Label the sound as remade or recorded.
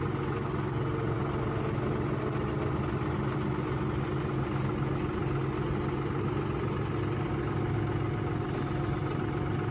recorded